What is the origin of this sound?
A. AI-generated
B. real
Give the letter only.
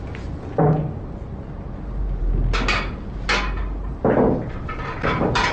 B